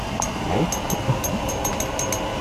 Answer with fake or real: real